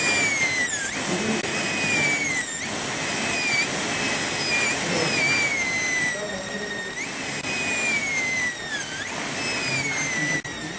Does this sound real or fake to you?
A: real